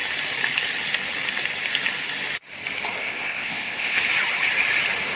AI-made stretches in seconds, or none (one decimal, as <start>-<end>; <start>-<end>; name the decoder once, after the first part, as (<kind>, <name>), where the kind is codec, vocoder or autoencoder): 3.0-4.0 (codec, ZipCodec)